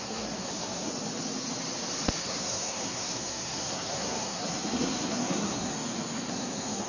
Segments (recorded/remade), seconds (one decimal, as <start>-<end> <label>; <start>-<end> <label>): 0.0-0.9 remade; 0.9-2.2 recorded; 2.2-5.7 remade; 5.7-6.3 recorded; 6.3-6.9 remade